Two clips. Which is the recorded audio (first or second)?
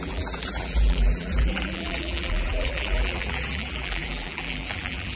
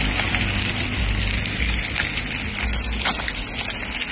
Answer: second